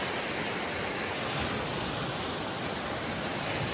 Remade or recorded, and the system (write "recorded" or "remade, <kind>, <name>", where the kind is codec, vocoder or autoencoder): recorded